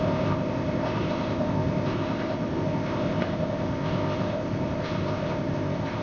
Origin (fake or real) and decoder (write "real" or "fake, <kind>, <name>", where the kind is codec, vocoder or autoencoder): fake, codec, ZipCodec